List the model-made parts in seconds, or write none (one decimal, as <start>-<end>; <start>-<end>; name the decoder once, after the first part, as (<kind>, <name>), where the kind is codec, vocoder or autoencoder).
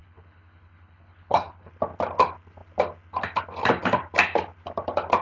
0.0-1.7 (codec, HILCodec)